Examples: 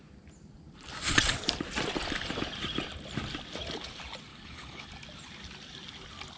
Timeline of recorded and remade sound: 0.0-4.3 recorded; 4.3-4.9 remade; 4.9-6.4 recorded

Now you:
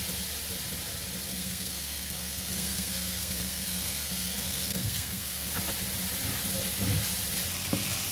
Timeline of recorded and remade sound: 0.0-1.3 recorded; 1.3-5.5 remade; 5.5-8.1 recorded

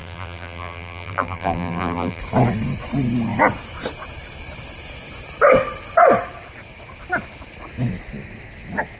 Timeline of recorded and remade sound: 0.0-2.2 remade; 2.2-9.0 recorded

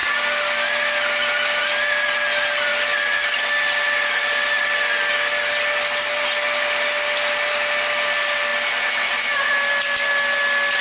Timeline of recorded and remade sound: 0.0-10.8 recorded

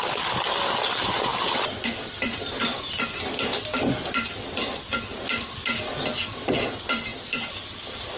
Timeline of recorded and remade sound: 0.0-8.2 recorded

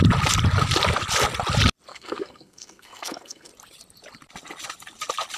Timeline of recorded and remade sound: 0.0-1.9 recorded; 1.9-3.5 remade; 3.5-5.4 recorded

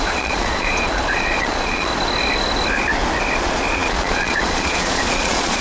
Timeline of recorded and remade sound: 0.0-1.9 remade; 1.9-3.4 recorded; 3.4-5.6 remade